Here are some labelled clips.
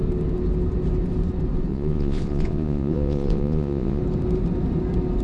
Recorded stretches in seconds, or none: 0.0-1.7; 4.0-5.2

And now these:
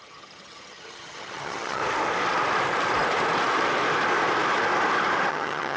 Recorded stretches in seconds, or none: 1.8-5.3